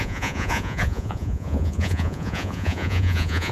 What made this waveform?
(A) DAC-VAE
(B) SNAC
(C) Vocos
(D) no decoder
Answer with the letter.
C